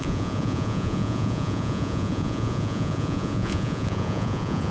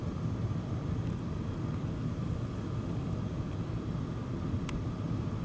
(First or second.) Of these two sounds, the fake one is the first